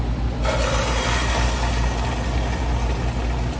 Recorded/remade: recorded